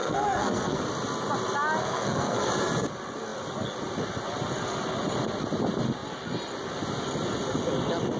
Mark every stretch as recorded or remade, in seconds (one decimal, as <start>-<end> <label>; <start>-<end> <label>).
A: 0.0-0.8 remade; 0.8-1.8 recorded; 1.8-2.5 remade; 2.5-8.2 recorded